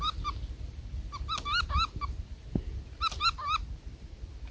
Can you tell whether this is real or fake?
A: real